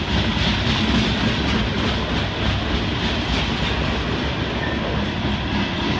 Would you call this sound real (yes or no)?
yes